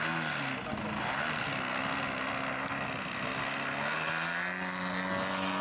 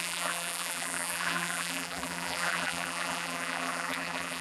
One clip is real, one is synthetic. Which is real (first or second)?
first